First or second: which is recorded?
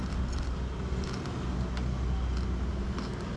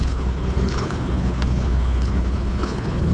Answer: first